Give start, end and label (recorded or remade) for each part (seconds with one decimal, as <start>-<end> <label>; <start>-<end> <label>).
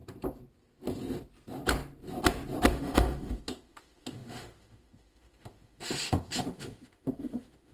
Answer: 0.0-2.7 recorded; 2.7-7.7 remade